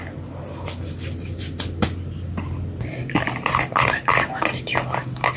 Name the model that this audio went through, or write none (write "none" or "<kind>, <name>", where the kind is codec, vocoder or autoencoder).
none